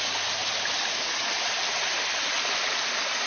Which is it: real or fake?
real